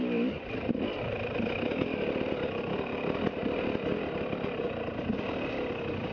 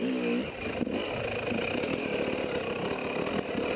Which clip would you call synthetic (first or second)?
first